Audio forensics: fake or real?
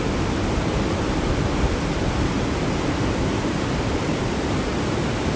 real